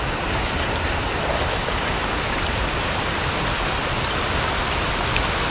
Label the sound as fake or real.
real